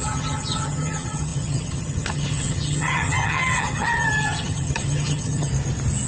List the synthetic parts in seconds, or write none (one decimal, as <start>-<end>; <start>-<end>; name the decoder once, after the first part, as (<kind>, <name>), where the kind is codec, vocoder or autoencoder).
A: 0.0-5.5 (vocoder, HiFi-GAN)